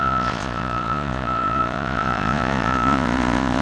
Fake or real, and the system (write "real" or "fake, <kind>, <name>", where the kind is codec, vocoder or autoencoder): fake, vocoder, Vocos